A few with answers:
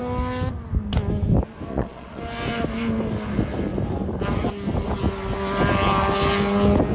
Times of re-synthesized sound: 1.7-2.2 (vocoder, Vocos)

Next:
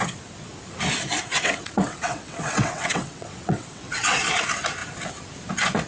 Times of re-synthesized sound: 1.3-4.2 (vocoder, WaveNeXt)

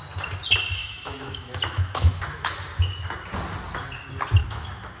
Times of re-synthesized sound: 0.8-2.5 (autoencoder, DAC-VAE); 4.4-5.0

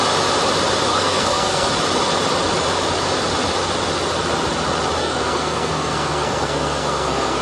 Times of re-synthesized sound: 0.9-1.7 (codec, SNAC); 5.0-7.4

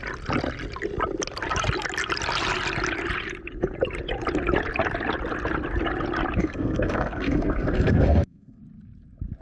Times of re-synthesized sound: 6.4-8.6 (codec, SNAC)

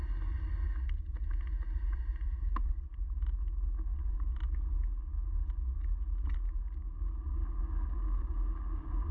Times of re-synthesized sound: none